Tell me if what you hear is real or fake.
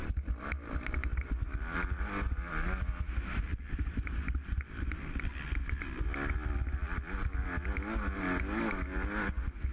real